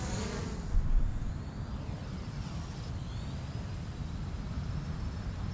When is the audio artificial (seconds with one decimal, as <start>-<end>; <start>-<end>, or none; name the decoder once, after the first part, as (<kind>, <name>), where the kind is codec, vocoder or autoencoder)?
none